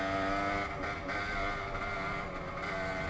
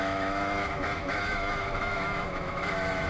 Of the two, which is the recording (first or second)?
first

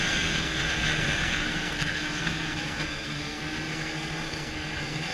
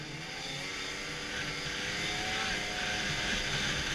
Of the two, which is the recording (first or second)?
second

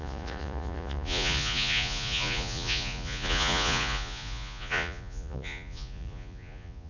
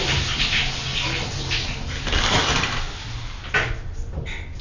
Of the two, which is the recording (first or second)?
second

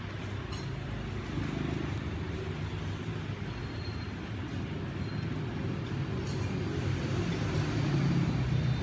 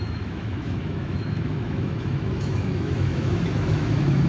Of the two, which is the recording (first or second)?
first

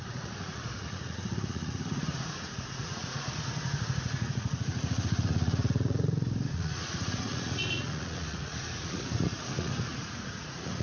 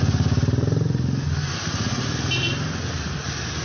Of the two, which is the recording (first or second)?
second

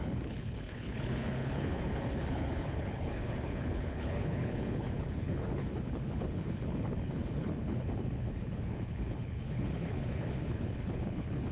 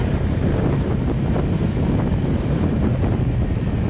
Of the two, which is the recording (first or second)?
second